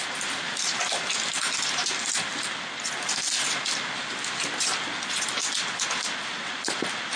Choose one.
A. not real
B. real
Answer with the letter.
B